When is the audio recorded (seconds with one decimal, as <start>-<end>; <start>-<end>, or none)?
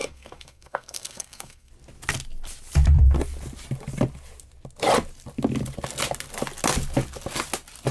1.7-7.9